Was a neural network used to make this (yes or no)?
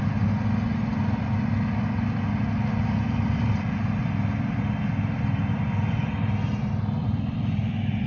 no